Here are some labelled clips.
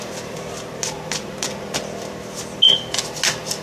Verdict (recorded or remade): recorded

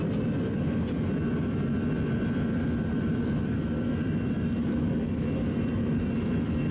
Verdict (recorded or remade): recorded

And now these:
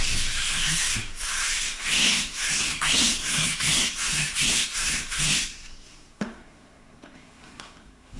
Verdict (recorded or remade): remade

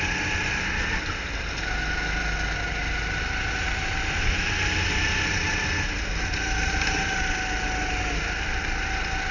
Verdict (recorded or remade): recorded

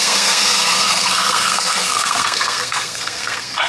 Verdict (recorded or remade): remade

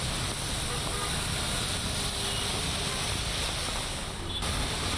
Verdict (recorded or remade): recorded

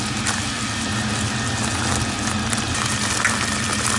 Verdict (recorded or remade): recorded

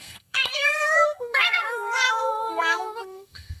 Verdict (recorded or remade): remade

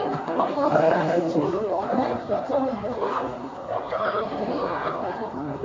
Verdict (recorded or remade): remade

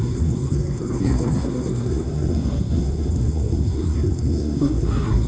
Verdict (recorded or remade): remade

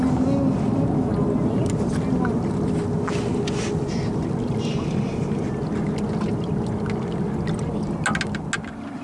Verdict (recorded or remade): recorded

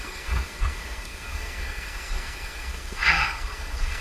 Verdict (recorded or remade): remade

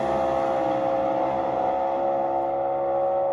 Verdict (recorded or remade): recorded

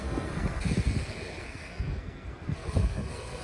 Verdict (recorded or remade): remade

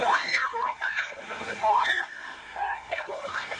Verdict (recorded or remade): remade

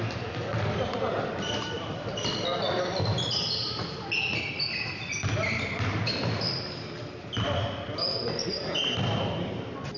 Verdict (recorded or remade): recorded